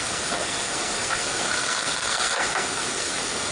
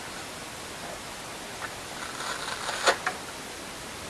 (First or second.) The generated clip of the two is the first